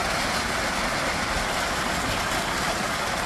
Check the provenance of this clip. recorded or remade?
recorded